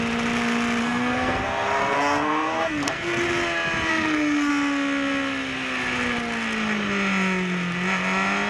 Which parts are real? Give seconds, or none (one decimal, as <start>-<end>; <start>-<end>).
0.0-0.8; 3.2-3.9; 4.5-8.5